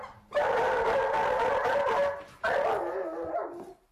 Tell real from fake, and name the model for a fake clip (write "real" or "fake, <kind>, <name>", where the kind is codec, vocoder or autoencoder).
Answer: real